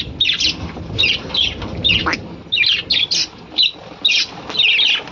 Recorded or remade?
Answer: recorded